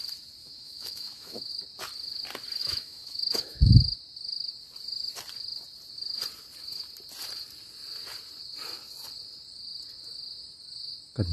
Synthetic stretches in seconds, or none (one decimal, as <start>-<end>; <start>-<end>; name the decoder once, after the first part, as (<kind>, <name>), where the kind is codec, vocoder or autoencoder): 0.4-1.5 (autoencoder, DAC-VAE); 2.6-3.7